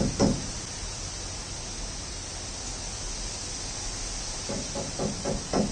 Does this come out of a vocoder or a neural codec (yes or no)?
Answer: no